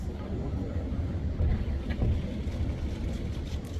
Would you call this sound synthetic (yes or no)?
no